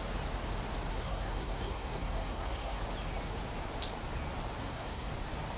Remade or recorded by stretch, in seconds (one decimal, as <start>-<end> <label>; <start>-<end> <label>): 0.0-0.9 recorded; 0.9-2.8 remade; 2.8-4.6 recorded; 4.6-5.1 remade; 5.1-5.6 recorded